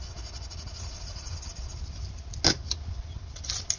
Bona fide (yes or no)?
yes